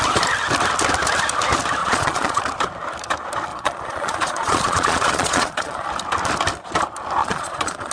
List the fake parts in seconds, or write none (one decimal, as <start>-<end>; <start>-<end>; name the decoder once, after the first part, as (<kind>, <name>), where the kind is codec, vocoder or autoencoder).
1.8-2.4 (vocoder, Vocos); 3.5-5.9; 7.2-7.9